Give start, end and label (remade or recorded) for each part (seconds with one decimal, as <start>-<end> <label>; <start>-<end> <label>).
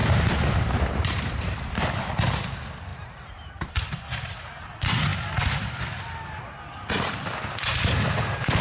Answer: 0.0-2.5 remade; 2.5-2.9 recorded; 2.9-3.7 remade; 3.7-8.6 recorded